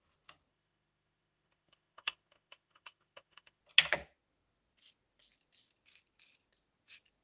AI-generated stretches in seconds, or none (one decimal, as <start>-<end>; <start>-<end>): 0.5-3.6